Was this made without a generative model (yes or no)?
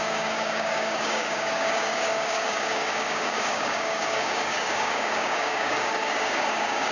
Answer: no